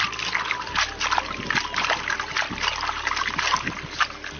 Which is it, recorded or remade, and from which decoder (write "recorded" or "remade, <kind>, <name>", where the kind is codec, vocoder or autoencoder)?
recorded